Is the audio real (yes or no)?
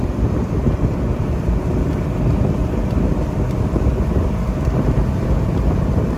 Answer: no